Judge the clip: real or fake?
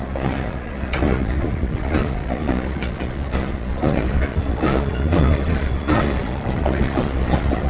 fake